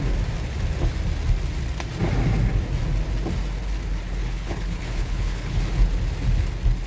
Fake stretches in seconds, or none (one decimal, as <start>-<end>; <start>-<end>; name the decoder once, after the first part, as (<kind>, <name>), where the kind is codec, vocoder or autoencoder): 4.2-5.6 (codec, HILCodec)